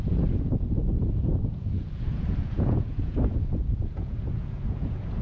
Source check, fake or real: fake